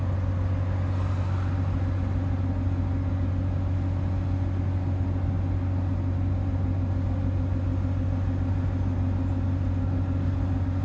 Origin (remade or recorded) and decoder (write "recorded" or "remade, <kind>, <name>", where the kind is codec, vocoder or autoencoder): recorded